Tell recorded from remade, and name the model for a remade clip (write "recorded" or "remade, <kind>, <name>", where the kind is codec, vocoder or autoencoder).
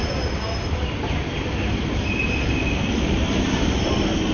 recorded